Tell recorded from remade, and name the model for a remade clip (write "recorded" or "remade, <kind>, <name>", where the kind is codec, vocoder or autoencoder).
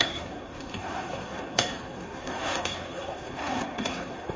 remade, codec, SNAC